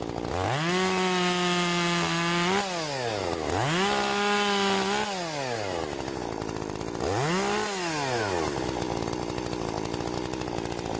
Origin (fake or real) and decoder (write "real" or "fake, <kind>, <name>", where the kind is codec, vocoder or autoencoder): real